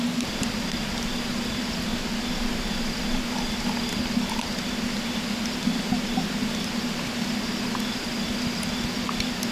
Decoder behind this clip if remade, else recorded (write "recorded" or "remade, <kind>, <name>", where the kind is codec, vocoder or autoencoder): recorded